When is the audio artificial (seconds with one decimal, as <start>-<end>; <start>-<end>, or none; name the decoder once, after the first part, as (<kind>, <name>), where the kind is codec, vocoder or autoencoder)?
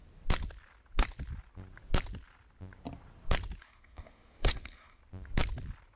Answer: 3.6-5.0 (codec, SNAC)